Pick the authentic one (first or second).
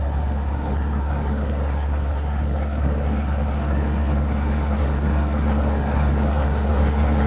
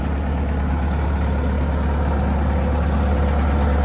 second